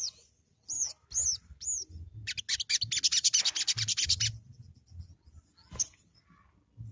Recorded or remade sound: recorded